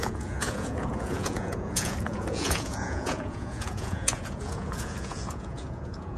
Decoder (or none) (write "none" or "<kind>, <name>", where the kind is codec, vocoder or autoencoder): vocoder, Vocos